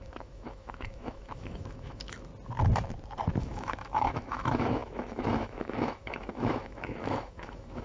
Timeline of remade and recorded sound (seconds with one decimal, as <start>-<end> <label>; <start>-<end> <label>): 0.0-2.3 remade; 2.3-3.4 recorded; 3.4-7.8 remade